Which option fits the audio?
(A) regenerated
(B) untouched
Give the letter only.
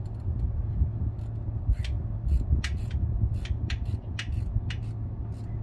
B